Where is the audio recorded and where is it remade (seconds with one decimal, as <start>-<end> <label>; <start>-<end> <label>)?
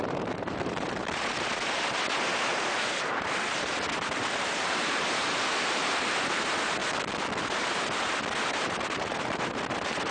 0.0-6.8 remade; 6.8-7.4 recorded; 7.4-10.1 remade